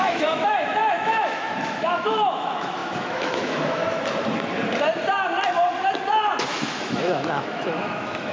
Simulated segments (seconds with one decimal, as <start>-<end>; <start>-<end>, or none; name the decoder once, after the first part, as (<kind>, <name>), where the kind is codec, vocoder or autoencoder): 0.0-3.8 (autoencoder, DAC-VAE); 6.5-8.3